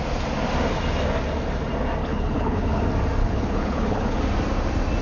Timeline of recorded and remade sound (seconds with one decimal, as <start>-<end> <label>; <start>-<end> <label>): 0.0-2.0 recorded; 2.0-2.8 remade; 2.8-3.2 recorded; 3.2-4.2 remade; 4.2-5.0 recorded

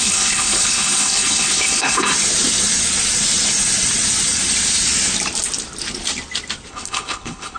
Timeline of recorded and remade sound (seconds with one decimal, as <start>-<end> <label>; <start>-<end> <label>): 0.0-2.1 remade; 2.1-6.7 recorded; 6.7-7.6 remade

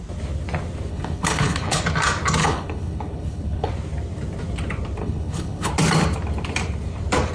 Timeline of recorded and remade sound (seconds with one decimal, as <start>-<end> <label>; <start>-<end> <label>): 0.0-0.9 recorded; 0.9-1.8 remade; 1.8-2.4 recorded; 2.4-3.7 remade; 3.7-5.0 recorded; 5.0-5.7 remade; 5.7-7.3 recorded

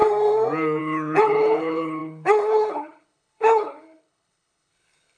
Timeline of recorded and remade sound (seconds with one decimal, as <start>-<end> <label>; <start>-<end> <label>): 0.0-0.8 recorded; 0.8-5.2 remade